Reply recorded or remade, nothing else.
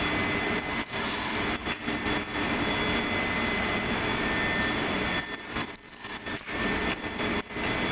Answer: recorded